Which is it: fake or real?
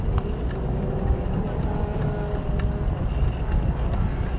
real